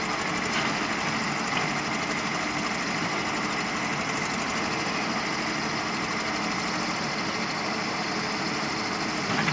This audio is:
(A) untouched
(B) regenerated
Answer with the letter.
A